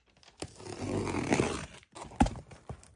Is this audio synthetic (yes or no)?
no